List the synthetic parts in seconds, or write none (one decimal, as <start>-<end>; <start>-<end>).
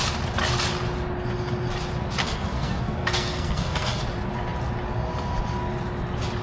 2.2-4.0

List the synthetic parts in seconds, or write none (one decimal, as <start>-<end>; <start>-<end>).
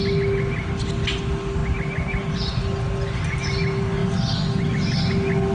none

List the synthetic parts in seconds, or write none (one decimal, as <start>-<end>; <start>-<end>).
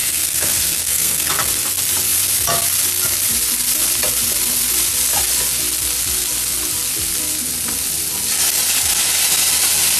0.0-1.3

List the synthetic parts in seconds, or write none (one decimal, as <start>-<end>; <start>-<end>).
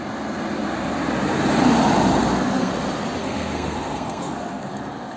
2.2-2.7; 3.2-5.2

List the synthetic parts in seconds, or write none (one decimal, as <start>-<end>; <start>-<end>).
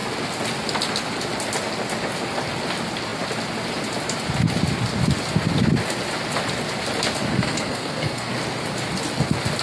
7.3-8.3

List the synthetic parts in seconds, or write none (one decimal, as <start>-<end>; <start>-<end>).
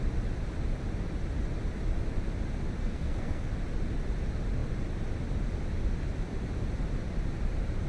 2.8-3.5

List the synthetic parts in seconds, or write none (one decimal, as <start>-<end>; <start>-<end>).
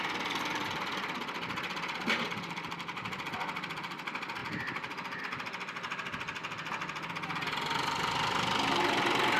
none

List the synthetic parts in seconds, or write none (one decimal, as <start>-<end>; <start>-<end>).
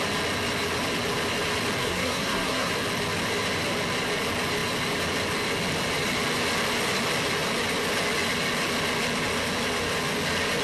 1.8-2.7